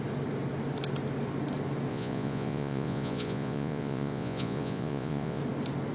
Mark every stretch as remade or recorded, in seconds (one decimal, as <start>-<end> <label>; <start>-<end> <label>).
0.0-1.9 recorded; 1.9-5.4 remade; 5.4-5.9 recorded